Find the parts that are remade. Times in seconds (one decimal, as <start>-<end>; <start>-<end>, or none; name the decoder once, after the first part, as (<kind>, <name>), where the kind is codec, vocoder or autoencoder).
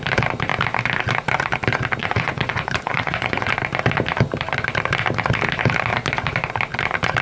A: 2.0-3.5 (vocoder, Vocos)